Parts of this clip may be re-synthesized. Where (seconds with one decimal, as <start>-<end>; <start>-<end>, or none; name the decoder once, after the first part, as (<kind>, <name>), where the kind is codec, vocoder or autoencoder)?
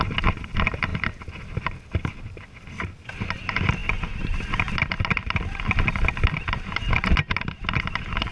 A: none